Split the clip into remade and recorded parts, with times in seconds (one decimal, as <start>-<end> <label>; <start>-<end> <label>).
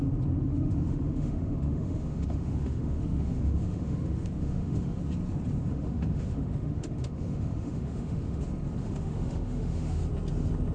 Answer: 0.0-0.4 recorded; 0.4-5.0 remade; 5.0-5.7 recorded; 5.7-8.4 remade; 8.4-8.8 recorded; 8.8-10.0 remade; 10.0-10.7 recorded